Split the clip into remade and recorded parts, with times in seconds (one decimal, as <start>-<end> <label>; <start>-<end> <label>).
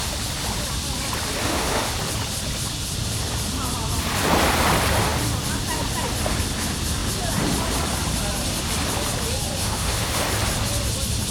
0.0-1.4 recorded; 1.4-1.9 remade; 1.9-9.6 recorded; 9.6-10.2 remade; 10.2-11.3 recorded